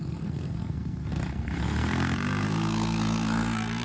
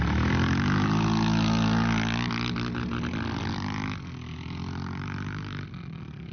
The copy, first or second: first